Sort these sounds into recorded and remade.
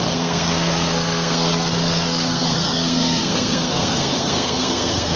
remade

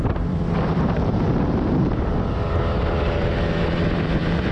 remade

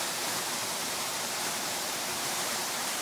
remade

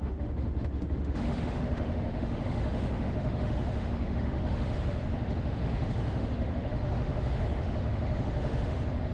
remade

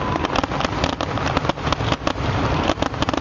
recorded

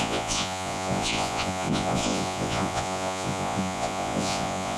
remade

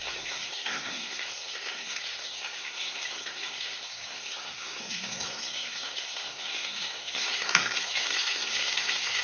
remade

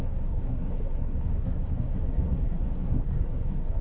remade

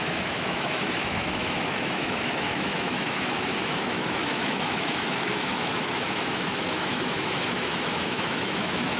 remade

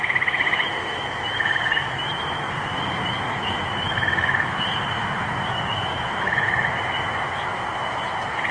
remade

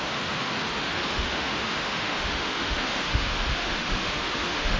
remade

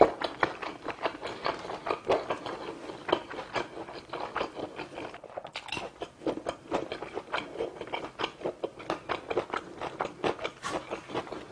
recorded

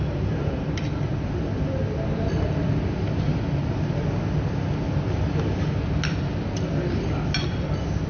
recorded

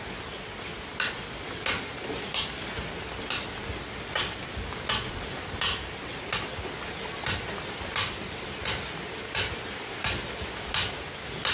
recorded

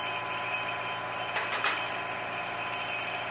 recorded